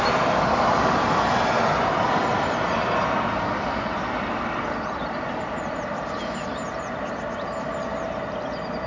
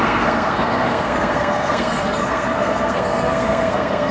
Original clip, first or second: first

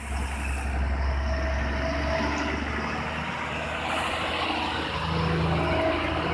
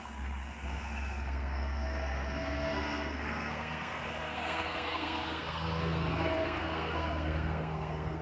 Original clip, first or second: first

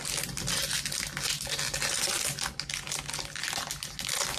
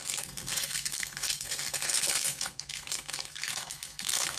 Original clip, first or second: first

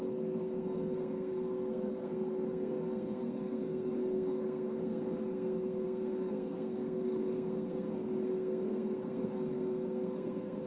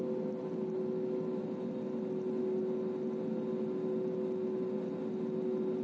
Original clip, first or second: second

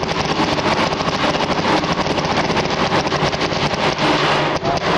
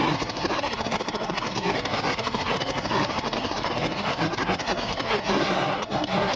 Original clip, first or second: first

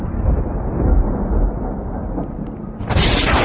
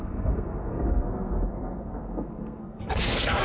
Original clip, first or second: first